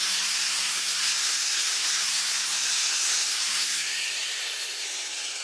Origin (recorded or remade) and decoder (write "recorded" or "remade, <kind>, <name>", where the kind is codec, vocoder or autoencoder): remade, codec, SNAC